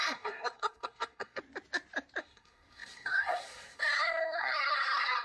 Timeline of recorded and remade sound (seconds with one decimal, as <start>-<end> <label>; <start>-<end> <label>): 0.0-1.4 remade; 1.4-2.2 recorded; 2.2-5.2 remade

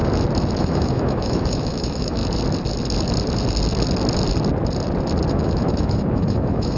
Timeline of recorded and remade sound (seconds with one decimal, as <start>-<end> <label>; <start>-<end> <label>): 0.0-0.6 recorded; 0.6-2.2 remade; 2.2-5.3 recorded; 5.3-6.8 remade

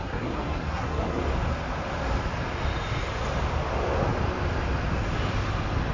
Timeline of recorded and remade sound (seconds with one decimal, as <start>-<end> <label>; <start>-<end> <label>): 0.0-1.2 remade; 1.2-5.9 recorded

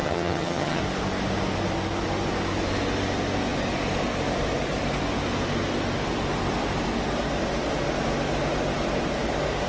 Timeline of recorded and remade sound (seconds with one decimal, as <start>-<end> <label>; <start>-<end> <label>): 0.0-0.8 remade; 0.8-9.7 recorded

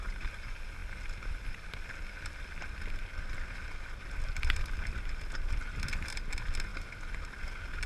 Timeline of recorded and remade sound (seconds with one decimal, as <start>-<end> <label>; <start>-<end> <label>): 0.0-7.9 recorded

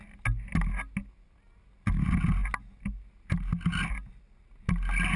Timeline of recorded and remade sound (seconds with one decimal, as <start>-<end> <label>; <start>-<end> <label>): 0.0-5.2 recorded

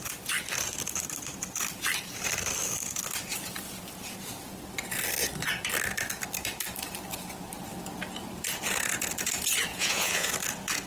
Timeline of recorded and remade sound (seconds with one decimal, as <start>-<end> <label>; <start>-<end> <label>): 0.0-9.7 recorded; 9.7-10.3 remade; 10.3-10.9 recorded